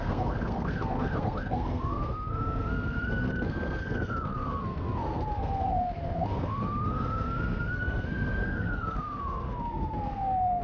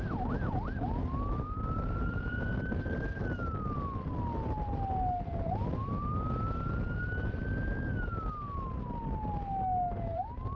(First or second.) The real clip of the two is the second